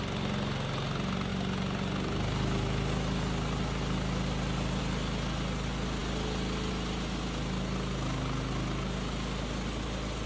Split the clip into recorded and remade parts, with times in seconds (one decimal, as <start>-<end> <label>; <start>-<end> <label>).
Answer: 0.0-10.3 recorded